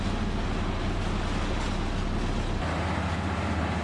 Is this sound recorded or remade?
recorded